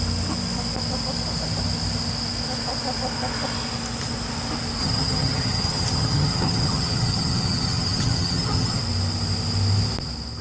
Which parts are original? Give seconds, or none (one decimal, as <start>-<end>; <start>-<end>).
0.0-4.8; 8.8-10.4